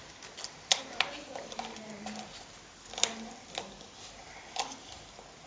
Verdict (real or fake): real